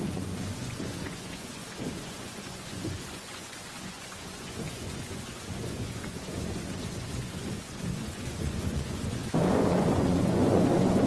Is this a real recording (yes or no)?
no